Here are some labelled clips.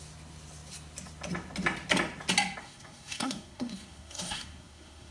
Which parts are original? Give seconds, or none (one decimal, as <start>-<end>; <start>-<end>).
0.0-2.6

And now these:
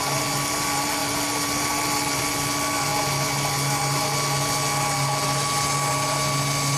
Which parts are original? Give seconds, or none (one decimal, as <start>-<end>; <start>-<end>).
0.0-6.8

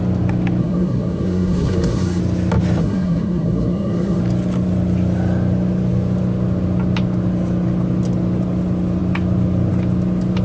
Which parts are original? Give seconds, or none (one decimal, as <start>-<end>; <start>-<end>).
0.0-0.6; 2.2-2.8; 4.2-10.4

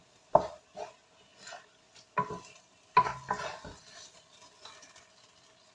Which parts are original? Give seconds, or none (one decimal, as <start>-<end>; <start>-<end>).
0.0-5.7